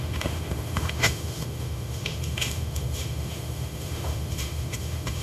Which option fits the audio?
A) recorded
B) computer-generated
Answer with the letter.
B